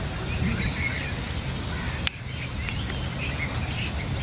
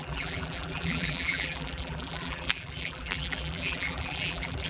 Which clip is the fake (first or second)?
second